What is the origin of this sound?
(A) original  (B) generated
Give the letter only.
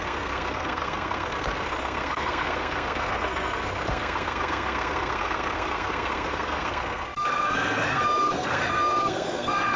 B